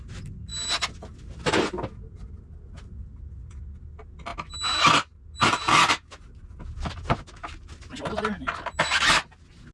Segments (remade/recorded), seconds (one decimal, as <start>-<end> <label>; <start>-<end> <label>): 0.0-9.7 recorded